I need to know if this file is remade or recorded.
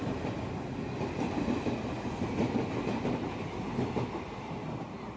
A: recorded